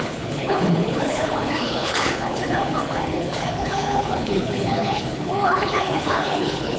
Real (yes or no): no